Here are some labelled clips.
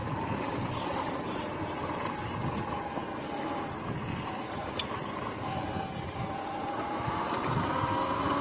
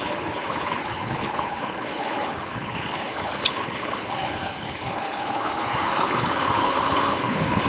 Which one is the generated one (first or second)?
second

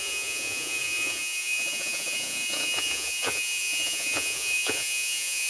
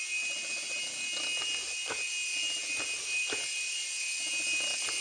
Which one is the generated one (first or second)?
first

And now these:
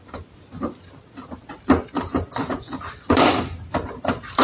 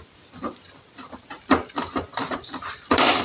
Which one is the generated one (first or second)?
second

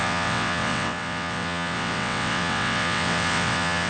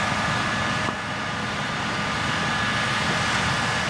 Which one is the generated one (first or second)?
first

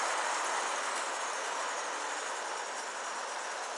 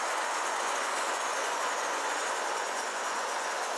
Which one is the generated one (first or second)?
second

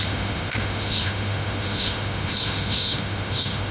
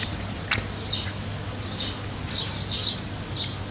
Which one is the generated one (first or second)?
first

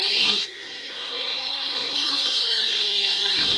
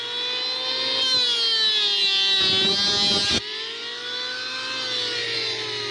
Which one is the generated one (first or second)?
first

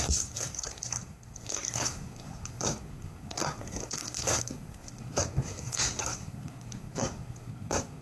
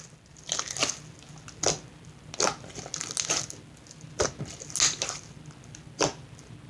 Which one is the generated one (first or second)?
first